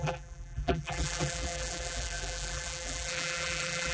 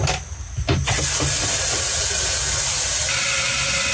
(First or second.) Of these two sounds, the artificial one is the first